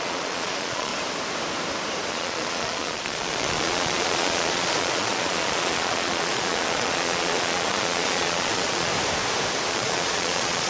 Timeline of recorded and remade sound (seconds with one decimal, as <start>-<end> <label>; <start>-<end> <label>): 0.0-0.9 remade; 0.9-2.1 recorded; 2.1-8.9 remade; 8.9-9.7 recorded; 9.7-10.7 remade

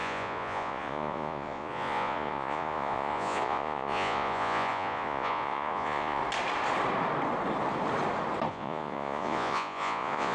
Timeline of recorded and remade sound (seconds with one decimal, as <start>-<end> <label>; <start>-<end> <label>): 0.0-6.2 remade; 6.2-8.5 recorded; 8.5-10.3 remade